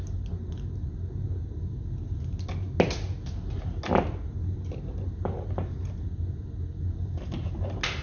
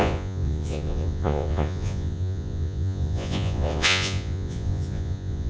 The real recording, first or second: first